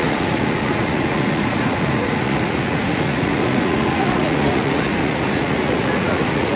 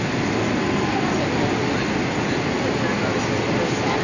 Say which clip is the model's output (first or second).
first